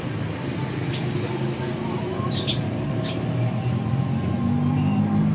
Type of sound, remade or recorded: recorded